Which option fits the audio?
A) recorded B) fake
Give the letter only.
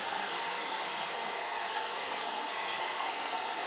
B